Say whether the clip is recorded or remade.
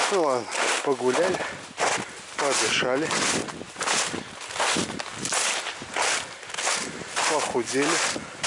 recorded